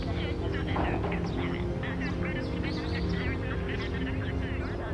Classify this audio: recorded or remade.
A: recorded